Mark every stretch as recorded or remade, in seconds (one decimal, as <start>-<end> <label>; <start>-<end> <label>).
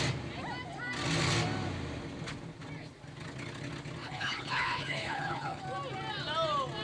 0.0-4.0 recorded; 4.0-5.6 remade; 5.6-6.8 recorded